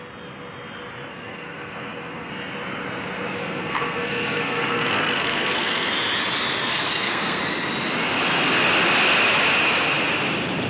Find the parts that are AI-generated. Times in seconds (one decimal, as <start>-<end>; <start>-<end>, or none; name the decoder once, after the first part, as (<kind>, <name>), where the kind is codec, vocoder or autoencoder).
1.1-2.3 (codec, SNAC); 3.4-5.9; 6.7-7.4